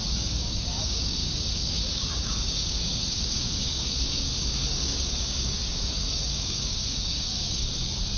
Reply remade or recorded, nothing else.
remade